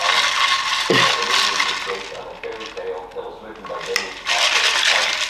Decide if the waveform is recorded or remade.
recorded